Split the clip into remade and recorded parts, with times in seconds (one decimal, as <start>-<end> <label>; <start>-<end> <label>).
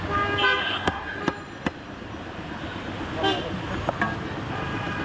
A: 0.0-0.6 recorded; 0.6-1.2 remade; 1.2-5.0 recorded